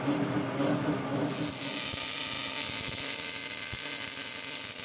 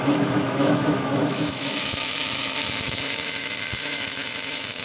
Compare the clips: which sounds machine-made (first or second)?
second